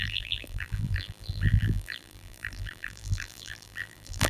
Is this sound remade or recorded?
remade